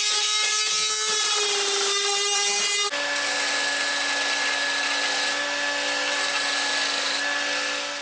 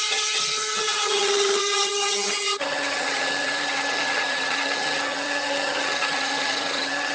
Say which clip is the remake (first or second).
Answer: second